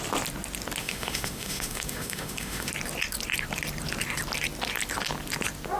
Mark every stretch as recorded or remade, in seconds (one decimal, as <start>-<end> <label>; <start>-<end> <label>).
0.0-0.8 recorded; 0.8-2.7 remade; 2.7-5.8 recorded